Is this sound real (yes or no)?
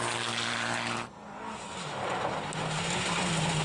yes